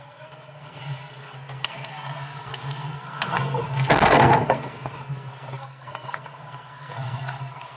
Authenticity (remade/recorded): remade